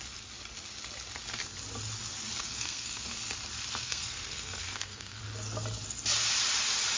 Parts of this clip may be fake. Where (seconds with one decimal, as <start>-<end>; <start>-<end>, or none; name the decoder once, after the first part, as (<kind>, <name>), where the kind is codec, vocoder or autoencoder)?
2.4-3.1 (codec, SNAC); 3.8-5.2